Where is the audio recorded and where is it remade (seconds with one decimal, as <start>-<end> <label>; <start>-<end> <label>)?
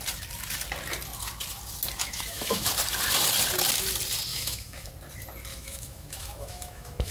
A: 0.0-2.0 recorded; 2.0-2.7 remade; 2.7-4.3 recorded; 4.3-4.9 remade; 4.9-5.5 recorded; 5.5-7.1 remade